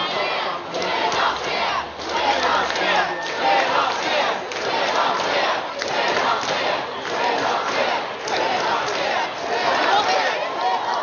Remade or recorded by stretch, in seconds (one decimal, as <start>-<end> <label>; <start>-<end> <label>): 0.0-11.0 recorded